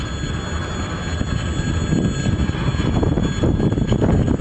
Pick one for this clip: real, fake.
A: real